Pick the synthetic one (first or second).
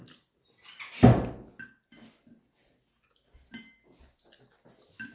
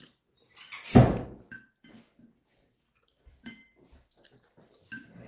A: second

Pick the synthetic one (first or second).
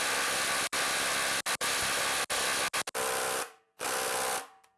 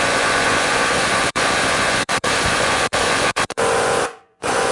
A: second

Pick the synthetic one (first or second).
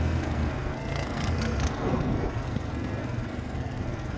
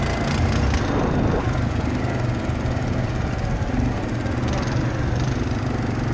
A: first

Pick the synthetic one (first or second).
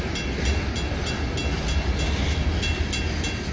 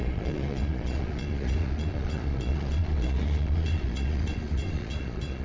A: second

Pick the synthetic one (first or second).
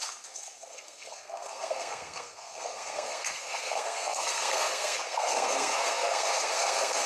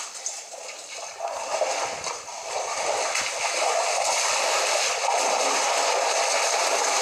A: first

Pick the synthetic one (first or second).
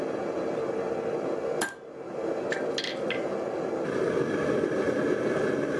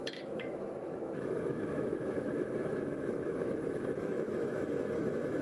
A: second